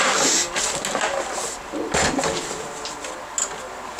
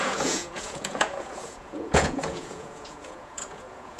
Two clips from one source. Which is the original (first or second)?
first